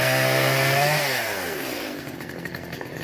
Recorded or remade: remade